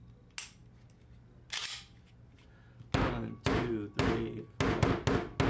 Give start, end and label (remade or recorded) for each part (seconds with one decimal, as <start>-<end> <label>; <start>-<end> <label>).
0.0-5.5 recorded